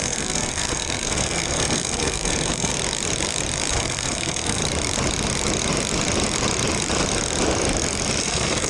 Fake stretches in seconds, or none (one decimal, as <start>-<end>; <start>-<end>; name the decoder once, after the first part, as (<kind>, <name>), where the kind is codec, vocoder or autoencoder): 0.0-2.7 (codec, SNAC); 3.7-4.6; 8.2-8.7